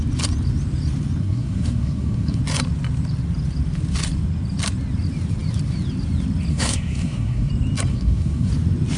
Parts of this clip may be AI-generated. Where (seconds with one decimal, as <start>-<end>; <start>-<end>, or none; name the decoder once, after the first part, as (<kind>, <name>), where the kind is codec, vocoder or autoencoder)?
1.2-2.4 (codec, SNAC); 6.5-7.5; 7.9-8.5